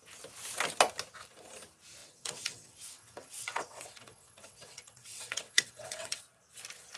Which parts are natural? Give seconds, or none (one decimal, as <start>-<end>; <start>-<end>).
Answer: 0.0-2.0; 6.2-7.0